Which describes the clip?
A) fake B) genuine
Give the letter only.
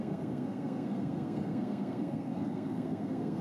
A